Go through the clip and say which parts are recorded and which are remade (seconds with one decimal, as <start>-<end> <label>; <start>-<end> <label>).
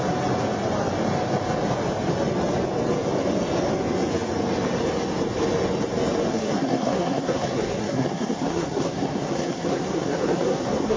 0.0-6.3 recorded; 6.3-11.0 remade